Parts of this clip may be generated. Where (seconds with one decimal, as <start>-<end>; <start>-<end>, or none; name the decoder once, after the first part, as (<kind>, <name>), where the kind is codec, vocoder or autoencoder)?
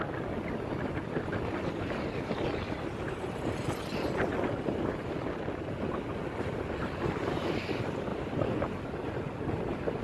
2.9-3.7 (vocoder, BigVGAN v2); 8.1-8.8